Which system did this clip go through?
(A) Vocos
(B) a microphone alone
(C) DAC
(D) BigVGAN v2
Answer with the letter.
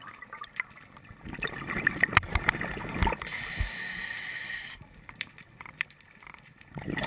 D